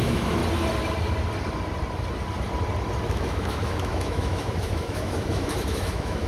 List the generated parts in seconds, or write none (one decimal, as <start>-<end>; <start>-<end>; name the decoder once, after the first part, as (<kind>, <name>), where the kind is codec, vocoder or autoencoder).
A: 0.0-0.4 (autoencoder, DAC-VAE); 3.1-6.3